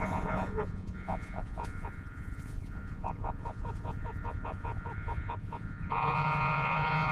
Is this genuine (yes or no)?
no